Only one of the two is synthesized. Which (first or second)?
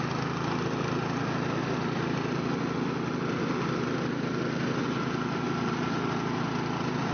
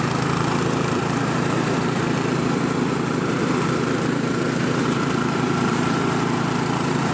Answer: second